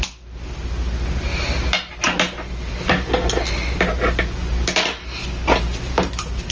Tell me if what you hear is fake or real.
real